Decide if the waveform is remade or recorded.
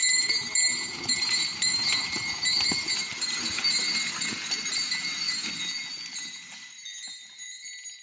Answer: recorded